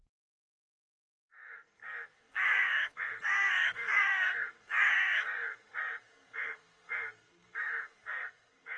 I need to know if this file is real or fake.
fake